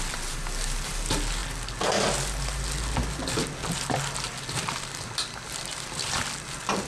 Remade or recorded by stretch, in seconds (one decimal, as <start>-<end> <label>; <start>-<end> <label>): 0.0-6.9 recorded